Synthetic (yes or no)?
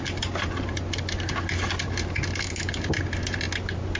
no